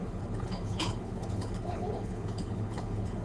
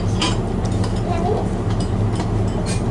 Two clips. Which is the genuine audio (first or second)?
second